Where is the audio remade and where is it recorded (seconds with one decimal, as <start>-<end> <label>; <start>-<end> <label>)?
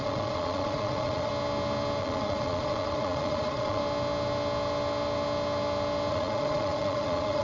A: 0.0-1.3 remade; 1.3-2.0 recorded; 2.0-3.8 remade; 3.8-6.1 recorded; 6.1-7.4 remade